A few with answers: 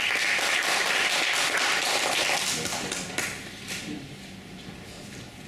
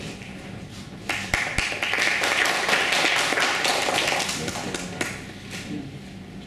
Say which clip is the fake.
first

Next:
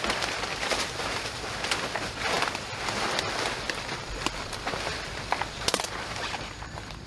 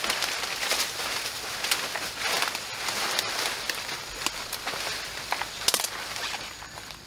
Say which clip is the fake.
first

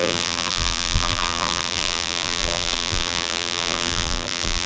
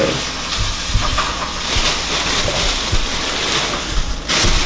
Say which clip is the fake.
first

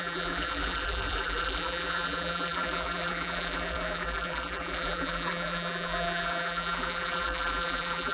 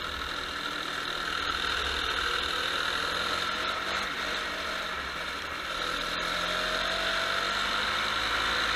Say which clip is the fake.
first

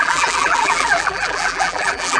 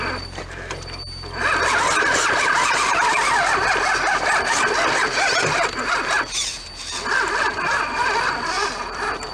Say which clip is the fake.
first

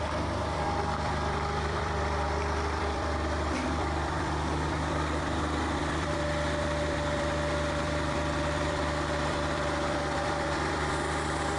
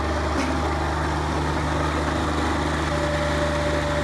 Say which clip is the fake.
first